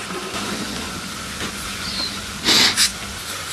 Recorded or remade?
remade